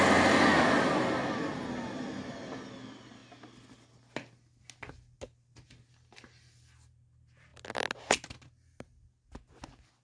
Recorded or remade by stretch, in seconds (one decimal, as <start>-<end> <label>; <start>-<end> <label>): 0.0-10.0 recorded